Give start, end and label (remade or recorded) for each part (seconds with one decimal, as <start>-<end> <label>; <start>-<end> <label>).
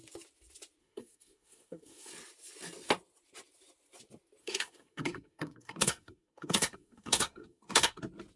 0.0-0.8 recorded; 0.8-2.1 remade; 2.1-4.4 recorded; 4.4-8.0 remade; 8.0-8.4 recorded